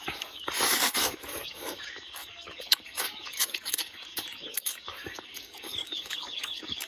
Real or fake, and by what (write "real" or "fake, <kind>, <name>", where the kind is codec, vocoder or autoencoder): fake, codec, DAC